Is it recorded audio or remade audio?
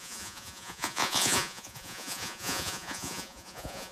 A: remade